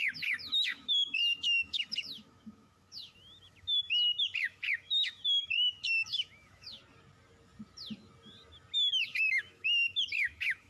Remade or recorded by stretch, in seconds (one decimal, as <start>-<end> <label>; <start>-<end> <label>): 0.0-6.8 remade; 6.8-9.0 recorded; 9.0-10.7 remade